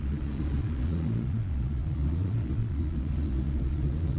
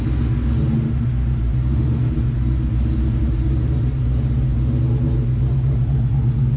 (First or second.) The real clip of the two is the second